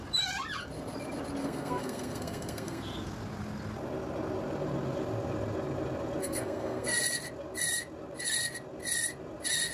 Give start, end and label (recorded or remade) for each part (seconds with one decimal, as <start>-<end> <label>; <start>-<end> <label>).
0.0-1.4 recorded; 1.4-2.8 remade; 2.8-6.2 recorded; 6.2-7.0 remade; 7.0-9.7 recorded